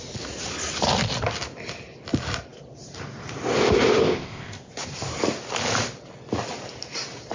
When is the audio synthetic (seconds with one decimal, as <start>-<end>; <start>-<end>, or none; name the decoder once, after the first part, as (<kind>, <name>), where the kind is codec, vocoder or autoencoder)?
4.0-4.7 (codec, ZipCodec)